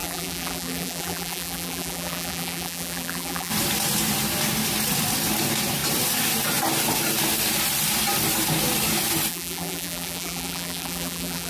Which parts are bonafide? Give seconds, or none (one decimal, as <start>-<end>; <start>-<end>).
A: 3.5-9.3